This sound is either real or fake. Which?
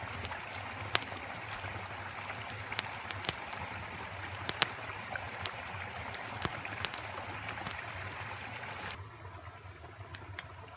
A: real